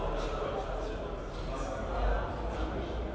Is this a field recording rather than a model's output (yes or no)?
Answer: yes